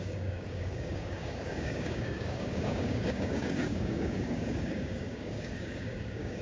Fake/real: fake